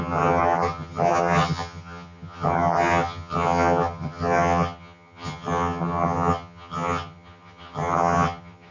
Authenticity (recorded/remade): remade